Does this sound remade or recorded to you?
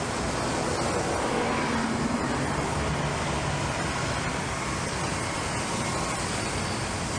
recorded